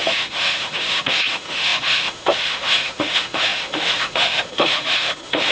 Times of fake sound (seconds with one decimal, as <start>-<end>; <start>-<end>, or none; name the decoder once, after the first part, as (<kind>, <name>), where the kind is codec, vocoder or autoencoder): 0.0-5.5 (autoencoder, DAC-VAE)